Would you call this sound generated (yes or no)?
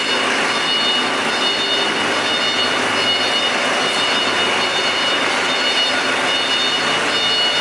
no